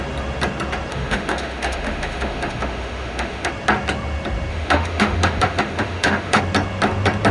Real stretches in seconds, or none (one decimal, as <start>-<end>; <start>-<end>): 0.0-0.9; 3.5-4.5; 6.4-7.3